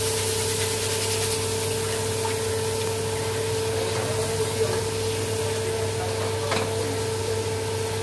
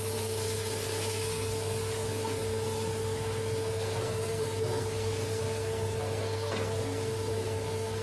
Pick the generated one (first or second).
second